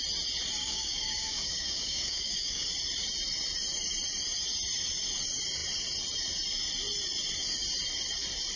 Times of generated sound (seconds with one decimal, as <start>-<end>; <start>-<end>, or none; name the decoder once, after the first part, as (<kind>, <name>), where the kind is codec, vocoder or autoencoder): 0.6-2.7 (codec, DAC)